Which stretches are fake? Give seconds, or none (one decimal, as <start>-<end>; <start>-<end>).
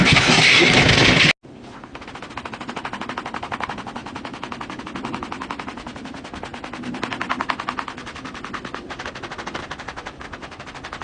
none